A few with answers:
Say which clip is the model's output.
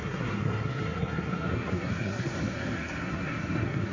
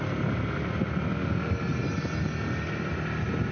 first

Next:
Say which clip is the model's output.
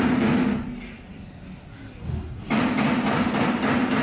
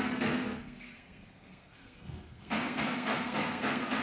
second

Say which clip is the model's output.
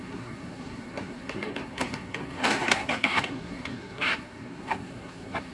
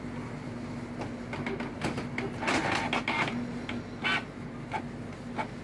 first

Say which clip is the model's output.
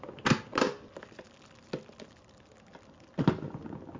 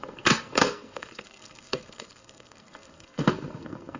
second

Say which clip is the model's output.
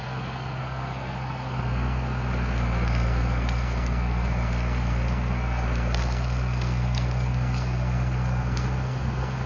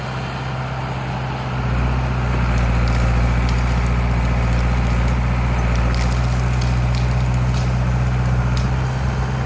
first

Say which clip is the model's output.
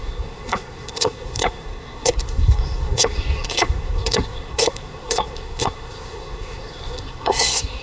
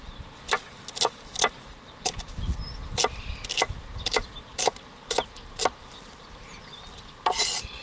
first